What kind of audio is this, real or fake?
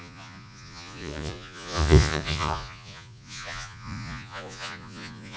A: fake